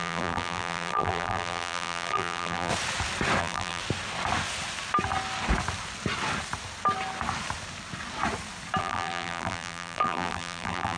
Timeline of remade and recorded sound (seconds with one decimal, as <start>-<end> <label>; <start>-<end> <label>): 0.0-2.7 remade; 2.7-3.4 recorded; 3.4-3.8 remade; 3.8-8.8 recorded; 8.8-11.0 remade